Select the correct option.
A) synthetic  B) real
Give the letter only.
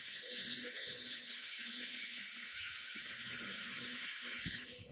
A